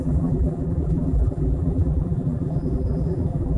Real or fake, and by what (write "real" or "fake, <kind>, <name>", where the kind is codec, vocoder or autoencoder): fake, vocoder, BigVGAN v2